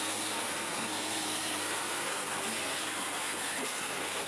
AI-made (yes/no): yes